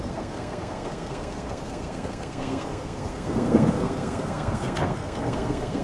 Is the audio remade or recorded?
remade